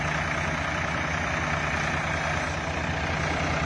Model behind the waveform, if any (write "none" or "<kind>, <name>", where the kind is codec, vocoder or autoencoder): none